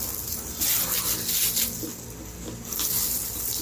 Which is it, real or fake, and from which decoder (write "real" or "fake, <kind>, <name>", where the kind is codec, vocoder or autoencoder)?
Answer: real